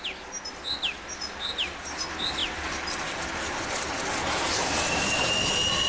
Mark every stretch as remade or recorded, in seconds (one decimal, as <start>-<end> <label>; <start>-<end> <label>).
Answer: 0.0-2.4 recorded; 2.4-4.2 remade; 4.2-5.9 recorded